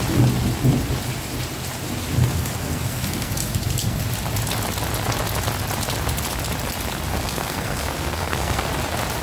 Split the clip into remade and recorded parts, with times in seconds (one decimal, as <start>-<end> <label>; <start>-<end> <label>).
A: 0.0-2.2 recorded; 2.2-4.0 remade; 4.0-7.1 recorded; 7.1-8.7 remade; 8.7-9.2 recorded

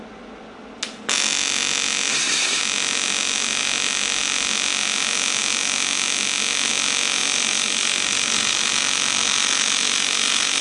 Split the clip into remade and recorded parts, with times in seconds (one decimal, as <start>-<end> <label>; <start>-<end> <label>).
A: 0.0-2.1 recorded; 2.1-2.6 remade; 2.6-10.6 recorded